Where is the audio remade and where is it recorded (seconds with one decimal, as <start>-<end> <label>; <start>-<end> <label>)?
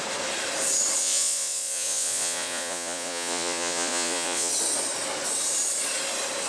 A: 0.0-1.0 recorded; 1.0-4.5 remade; 4.5-6.5 recorded